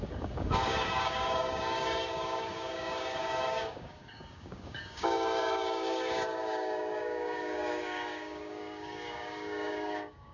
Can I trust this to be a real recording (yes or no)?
no